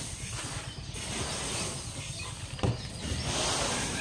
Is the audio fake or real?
real